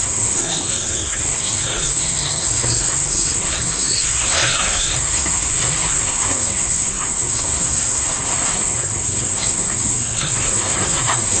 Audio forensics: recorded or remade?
remade